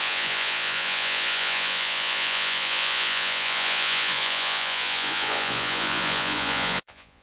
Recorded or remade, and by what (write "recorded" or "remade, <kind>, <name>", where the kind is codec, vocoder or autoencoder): remade, vocoder, Vocos